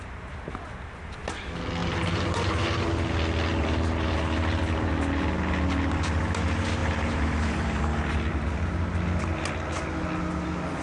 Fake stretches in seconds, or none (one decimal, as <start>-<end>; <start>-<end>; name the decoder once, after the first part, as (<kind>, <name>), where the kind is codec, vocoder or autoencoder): 1.8-2.9 (vocoder, BigVGAN v2); 3.5-4.2; 6.8-7.8